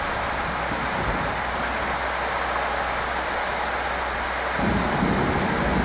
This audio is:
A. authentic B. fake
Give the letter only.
A